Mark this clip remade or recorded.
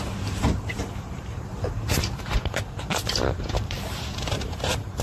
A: remade